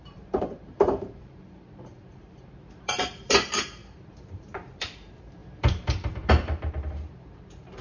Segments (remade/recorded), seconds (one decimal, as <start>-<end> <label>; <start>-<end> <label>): 0.0-7.8 remade